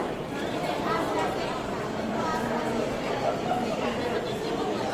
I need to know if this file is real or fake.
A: fake